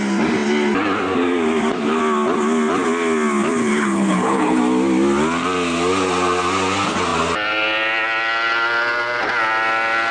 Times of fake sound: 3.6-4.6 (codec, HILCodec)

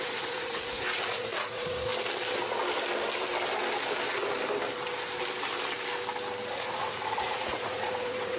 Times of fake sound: 0.0-1.9 (vocoder, Vocos); 6.5-8.4

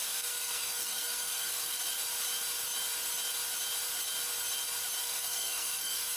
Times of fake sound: 0.0-1.8 (codec, SNAC); 5.0-6.2

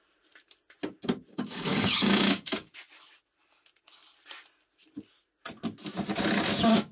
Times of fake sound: 1.3-2.7 (codec, DAC)

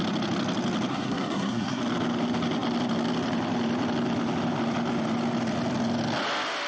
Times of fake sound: 0.9-1.8 (codec, SNAC)

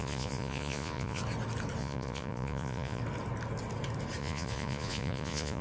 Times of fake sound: 0.0-1.2 (vocoder, Vocos); 1.8-3.0; 4.2-5.6

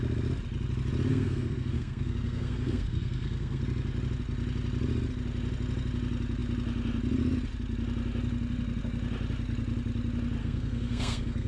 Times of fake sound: 1.1-3.6 (codec, SNAC); 10.4-11.5

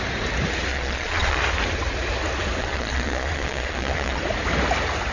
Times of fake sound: 0.7-1.4 (vocoder, Vocos); 2.6-4.2